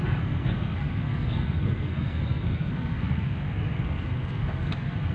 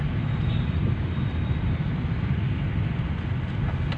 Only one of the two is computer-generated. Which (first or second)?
first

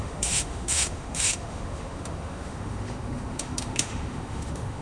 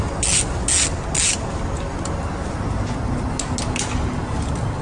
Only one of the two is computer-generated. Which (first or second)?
first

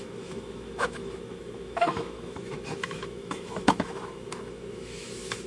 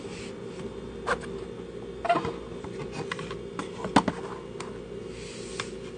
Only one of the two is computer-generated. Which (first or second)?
first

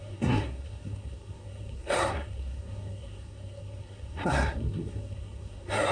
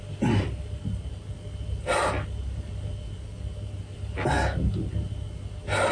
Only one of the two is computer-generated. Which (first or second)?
first